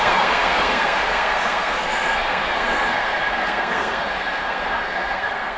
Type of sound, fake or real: fake